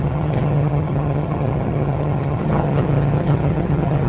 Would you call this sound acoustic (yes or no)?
no